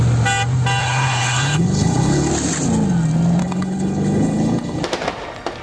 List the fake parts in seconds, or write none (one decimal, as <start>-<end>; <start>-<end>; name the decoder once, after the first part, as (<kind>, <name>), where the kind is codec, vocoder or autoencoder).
0.8-2.3 (codec, HILCodec); 3.4-4.8